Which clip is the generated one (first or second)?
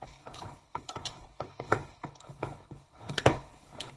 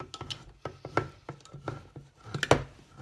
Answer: first